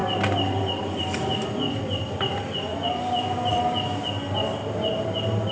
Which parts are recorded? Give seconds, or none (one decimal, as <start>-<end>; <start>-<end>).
0.0-5.5